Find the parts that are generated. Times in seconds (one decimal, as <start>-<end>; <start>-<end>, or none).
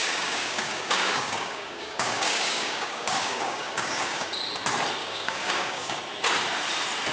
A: 0.0-4.3; 5.0-6.0